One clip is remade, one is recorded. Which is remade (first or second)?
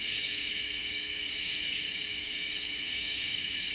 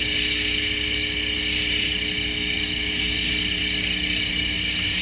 first